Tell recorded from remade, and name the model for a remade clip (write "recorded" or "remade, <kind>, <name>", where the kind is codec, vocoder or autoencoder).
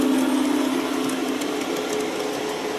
recorded